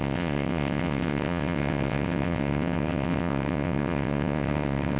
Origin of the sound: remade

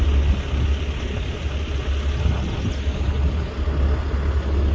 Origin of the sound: recorded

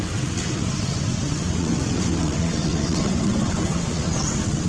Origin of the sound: remade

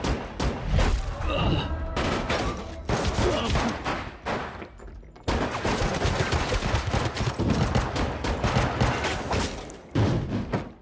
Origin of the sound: recorded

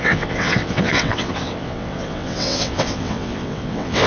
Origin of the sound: remade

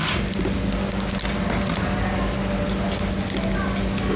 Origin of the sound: recorded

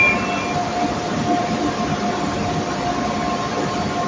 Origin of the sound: recorded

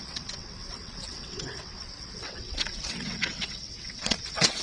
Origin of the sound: remade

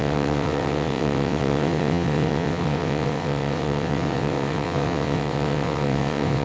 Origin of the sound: remade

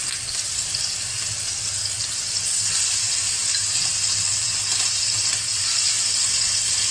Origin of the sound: recorded